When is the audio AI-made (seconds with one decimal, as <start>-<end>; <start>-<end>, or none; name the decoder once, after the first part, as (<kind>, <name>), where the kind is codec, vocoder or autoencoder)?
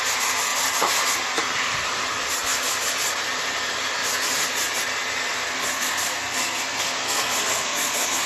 5.5-8.3 (codec, SNAC)